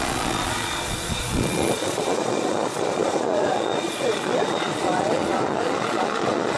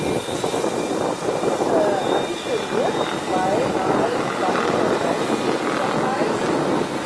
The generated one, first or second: first